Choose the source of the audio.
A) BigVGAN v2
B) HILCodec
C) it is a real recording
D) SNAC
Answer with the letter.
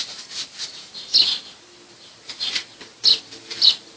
A